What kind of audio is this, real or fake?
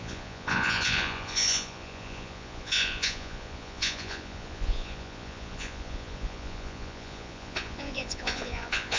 fake